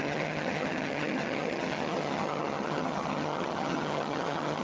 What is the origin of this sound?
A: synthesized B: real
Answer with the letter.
A